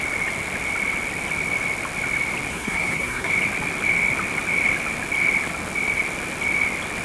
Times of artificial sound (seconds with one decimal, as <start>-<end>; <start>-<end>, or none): 2.5-3.3